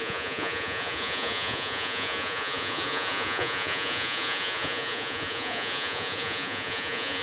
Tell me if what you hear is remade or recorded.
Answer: remade